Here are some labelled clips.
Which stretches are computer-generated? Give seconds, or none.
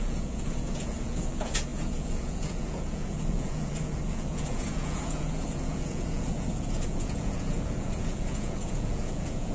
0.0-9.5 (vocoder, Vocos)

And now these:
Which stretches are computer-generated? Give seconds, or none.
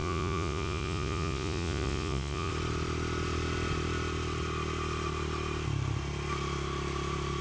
0.0-2.5 (vocoder, Vocos)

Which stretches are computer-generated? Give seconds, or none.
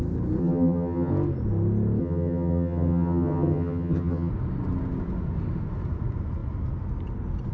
0.4-1.1 (vocoder, HiFi-GAN); 2.0-4.3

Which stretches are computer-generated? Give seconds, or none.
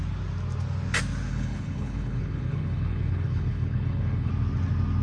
1.3-4.3 (codec, HILCodec)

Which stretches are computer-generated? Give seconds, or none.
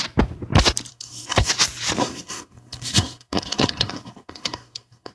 0.9-1.5 (codec, SNAC); 2.0-5.1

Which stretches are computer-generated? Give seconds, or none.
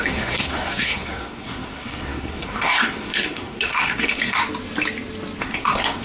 0.0-4.4 (codec, SNAC); 5.4-6.0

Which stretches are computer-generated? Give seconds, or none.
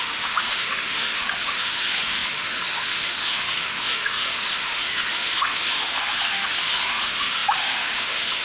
0.0-8.4 (autoencoder, DAC-VAE)